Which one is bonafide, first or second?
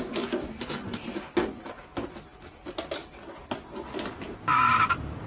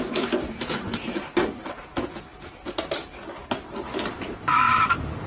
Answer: first